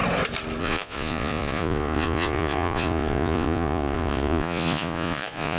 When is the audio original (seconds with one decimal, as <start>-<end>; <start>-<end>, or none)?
0.0-0.6